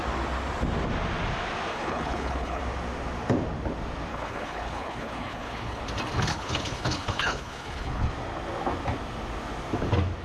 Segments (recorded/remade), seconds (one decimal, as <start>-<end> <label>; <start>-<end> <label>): 0.0-1.7 recorded; 1.7-2.6 remade; 2.6-4.1 recorded; 4.1-5.8 remade; 5.8-6.3 recorded; 6.3-8.1 remade; 8.1-10.2 recorded